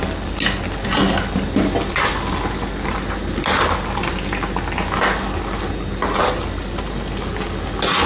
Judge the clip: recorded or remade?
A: recorded